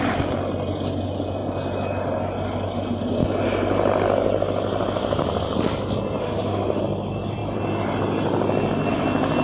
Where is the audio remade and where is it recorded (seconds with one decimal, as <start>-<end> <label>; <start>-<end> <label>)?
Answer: 0.0-6.2 recorded; 6.2-6.8 remade; 6.8-9.4 recorded